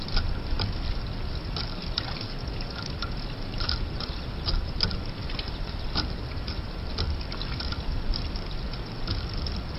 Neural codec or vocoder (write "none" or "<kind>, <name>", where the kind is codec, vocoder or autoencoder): none